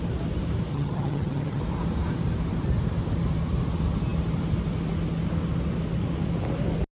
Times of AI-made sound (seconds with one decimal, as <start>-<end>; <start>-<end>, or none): 0.7-1.6